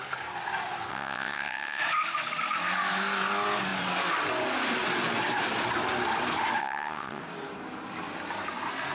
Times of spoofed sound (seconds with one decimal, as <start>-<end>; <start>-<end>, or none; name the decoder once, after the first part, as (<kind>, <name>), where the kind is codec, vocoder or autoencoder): 0.9-1.8 (vocoder, WaveNeXt); 6.6-7.2